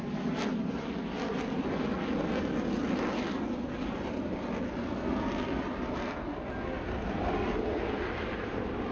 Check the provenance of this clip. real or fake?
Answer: real